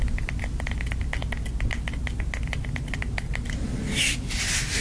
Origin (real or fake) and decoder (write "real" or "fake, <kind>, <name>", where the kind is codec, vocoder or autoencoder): real